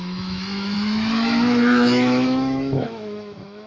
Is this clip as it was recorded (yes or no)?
no